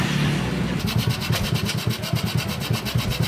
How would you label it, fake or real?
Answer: real